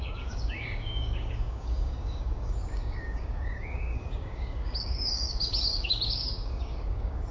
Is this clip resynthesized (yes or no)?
yes